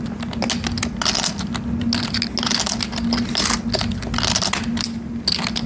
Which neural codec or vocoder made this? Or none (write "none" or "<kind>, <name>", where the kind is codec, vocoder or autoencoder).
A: none